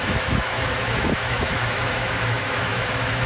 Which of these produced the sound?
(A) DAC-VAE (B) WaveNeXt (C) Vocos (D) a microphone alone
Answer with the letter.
A